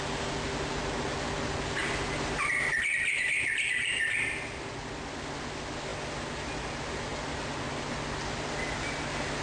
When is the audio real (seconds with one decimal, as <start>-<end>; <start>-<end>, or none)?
0.0-1.8; 4.7-5.9; 6.5-9.4